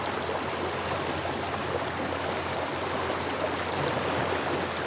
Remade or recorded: recorded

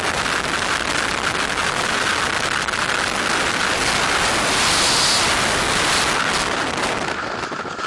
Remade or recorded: recorded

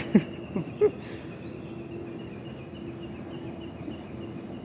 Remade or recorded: recorded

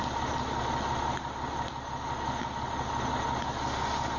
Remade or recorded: recorded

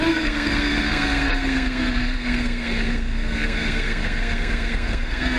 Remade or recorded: remade